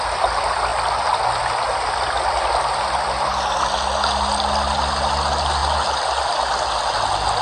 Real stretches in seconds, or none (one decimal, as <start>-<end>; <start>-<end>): 0.0-7.4